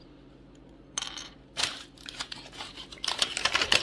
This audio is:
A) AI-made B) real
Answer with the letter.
A